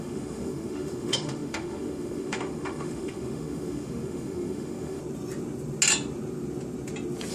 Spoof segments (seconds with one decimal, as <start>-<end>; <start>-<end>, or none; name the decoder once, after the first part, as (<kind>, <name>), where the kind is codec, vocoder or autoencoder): 0.0-5.0 (autoencoder, DAC-VAE)